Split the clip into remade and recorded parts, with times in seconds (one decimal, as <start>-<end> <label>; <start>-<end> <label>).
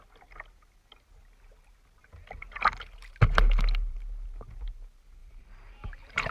0.0-5.2 recorded; 5.2-6.3 remade